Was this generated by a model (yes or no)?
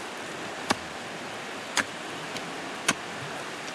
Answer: no